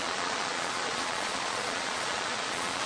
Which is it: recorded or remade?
remade